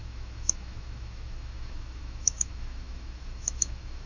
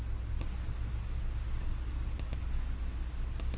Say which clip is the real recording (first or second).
second